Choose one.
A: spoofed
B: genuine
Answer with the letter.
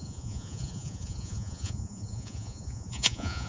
A